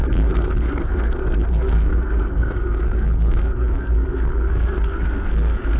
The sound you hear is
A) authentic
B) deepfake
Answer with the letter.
B